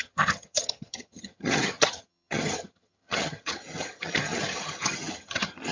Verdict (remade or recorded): remade